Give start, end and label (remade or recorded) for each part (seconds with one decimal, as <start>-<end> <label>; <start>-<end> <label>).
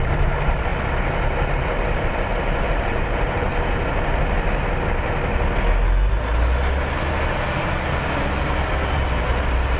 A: 0.0-0.7 remade; 0.7-1.5 recorded; 1.5-3.5 remade; 3.5-8.7 recorded; 8.7-9.8 remade